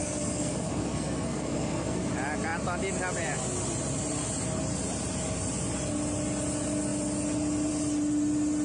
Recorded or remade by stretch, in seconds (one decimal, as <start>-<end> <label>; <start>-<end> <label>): 0.0-2.1 remade; 2.1-8.6 recorded